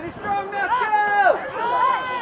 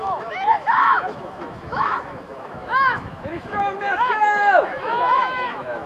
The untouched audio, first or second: first